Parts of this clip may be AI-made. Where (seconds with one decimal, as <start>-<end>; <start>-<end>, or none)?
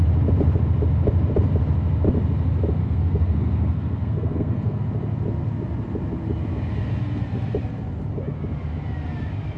2.8-4.8